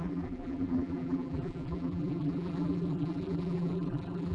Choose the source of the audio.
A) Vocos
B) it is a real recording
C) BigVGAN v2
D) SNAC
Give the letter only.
C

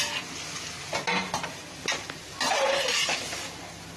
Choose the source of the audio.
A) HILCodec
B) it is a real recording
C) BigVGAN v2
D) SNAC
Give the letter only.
B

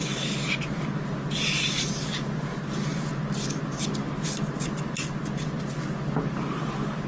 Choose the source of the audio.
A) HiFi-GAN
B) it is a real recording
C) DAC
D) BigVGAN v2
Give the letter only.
B